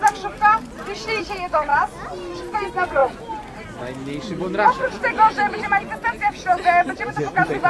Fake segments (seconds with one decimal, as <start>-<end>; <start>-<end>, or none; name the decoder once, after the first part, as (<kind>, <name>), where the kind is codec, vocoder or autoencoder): none